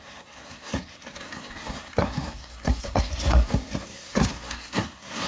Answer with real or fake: fake